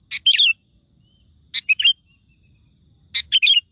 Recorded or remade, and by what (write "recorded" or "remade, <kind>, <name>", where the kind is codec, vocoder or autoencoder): recorded